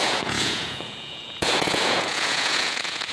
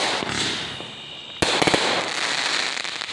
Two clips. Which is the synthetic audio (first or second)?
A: first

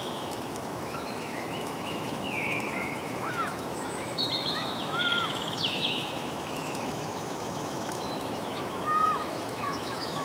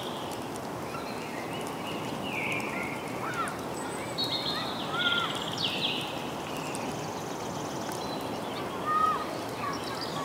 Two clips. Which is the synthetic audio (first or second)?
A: first